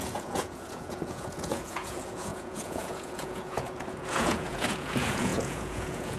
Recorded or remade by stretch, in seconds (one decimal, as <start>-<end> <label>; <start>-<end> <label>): 0.0-6.2 remade